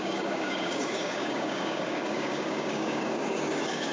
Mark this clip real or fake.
fake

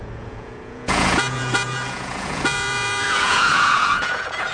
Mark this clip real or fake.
fake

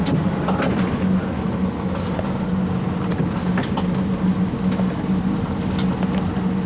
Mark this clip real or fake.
real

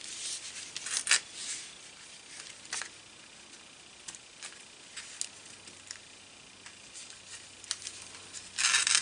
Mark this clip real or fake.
real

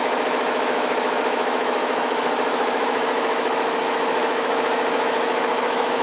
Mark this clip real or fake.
fake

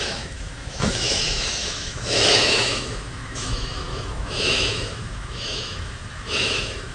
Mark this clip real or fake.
fake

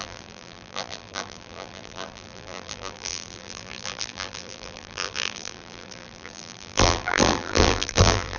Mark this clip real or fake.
fake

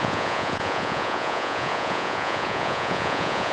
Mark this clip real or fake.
fake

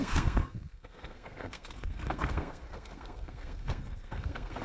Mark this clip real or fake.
fake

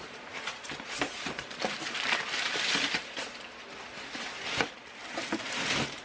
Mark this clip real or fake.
fake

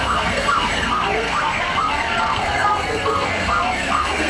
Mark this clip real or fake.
fake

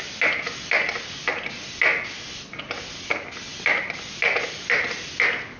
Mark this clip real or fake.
real